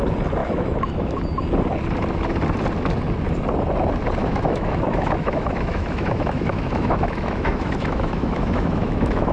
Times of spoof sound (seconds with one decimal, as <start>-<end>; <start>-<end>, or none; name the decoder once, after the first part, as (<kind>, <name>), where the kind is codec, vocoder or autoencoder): 0.4-1.2 (autoencoder, DAC-VAE); 4.2-9.3

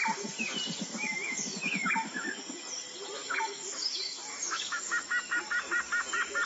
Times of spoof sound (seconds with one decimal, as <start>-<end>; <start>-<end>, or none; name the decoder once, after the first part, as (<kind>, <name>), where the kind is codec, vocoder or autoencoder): 0.9-2.4 (autoencoder, DAC-VAE); 3.2-5.4